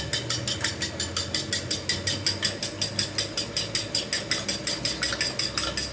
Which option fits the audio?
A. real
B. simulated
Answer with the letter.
A